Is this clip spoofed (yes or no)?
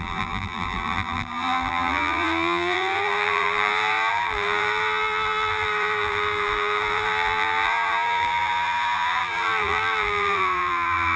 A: yes